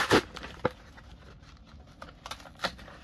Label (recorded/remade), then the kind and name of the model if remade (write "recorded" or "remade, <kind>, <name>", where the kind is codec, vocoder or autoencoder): recorded